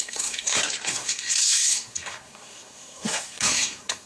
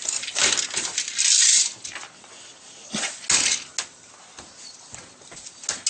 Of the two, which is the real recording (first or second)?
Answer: second